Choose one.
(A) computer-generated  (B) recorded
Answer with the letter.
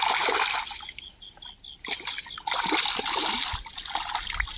B